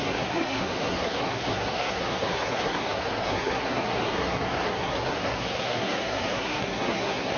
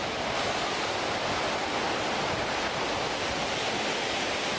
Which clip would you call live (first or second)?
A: second